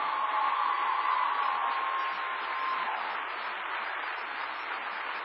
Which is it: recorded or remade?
recorded